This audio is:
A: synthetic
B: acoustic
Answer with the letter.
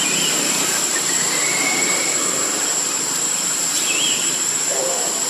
A